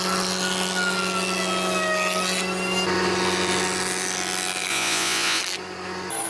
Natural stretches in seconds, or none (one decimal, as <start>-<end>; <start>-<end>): 0.0-4.7; 5.4-6.3